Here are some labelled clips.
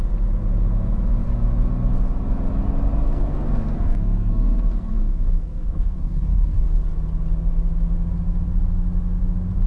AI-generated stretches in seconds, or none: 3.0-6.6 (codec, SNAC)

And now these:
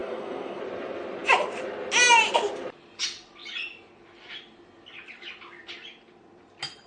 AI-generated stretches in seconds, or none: 0.0-0.6 (codec, SNAC)

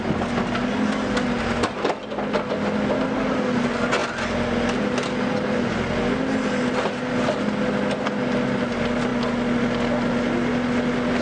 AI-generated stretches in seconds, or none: none